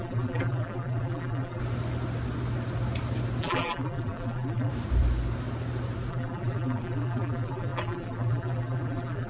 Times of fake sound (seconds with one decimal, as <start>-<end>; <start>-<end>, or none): 0.0-1.6; 3.4-4.7; 6.1-9.3